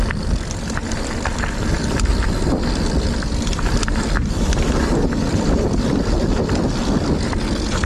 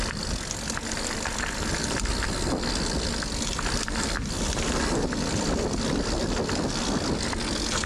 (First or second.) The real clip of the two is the second